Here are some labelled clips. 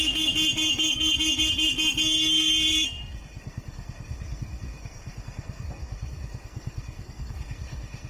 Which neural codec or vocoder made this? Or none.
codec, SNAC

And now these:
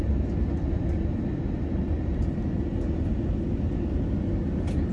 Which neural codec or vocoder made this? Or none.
none